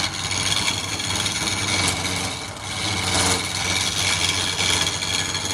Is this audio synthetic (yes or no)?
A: no